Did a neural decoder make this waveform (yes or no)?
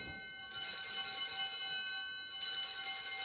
no